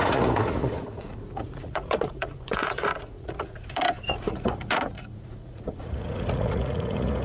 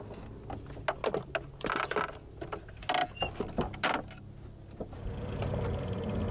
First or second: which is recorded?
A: second